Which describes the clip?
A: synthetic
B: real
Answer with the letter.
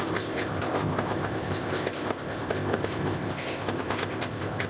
A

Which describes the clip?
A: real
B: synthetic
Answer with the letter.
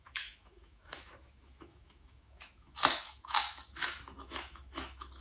B